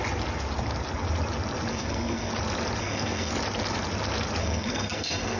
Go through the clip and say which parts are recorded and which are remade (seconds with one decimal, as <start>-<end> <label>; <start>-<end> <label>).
0.0-1.7 recorded; 1.7-2.3 remade; 2.3-2.8 recorded; 2.8-3.3 remade; 3.3-4.4 recorded; 4.4-5.4 remade

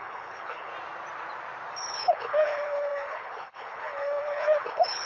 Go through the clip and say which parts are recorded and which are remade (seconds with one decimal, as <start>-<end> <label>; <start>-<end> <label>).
0.0-0.7 remade; 0.7-1.8 recorded; 1.8-5.1 remade

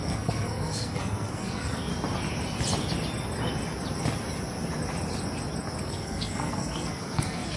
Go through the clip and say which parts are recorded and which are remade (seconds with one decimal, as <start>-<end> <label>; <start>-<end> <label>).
0.0-1.9 remade; 1.9-5.8 recorded; 5.8-7.6 remade

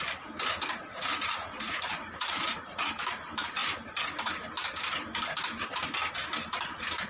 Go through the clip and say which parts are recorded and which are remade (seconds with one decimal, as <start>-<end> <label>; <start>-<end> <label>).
0.0-0.9 recorded; 0.9-2.9 remade; 2.9-7.1 recorded

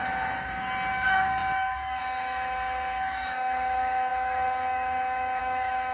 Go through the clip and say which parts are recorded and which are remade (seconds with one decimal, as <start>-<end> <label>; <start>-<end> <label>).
0.0-0.9 recorded; 0.9-5.9 remade

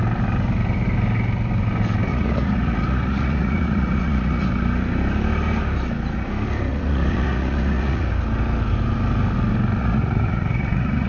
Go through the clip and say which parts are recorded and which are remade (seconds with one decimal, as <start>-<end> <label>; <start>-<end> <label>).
0.0-2.1 recorded; 2.1-4.5 remade; 4.5-6.7 recorded; 6.7-8.1 remade; 8.1-9.8 recorded; 9.8-11.1 remade

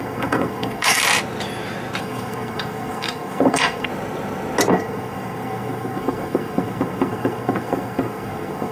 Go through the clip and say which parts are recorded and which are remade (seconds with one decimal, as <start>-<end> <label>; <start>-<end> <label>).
0.0-1.0 remade; 1.0-2.0 recorded; 2.0-3.9 remade; 3.9-4.7 recorded; 4.7-8.7 remade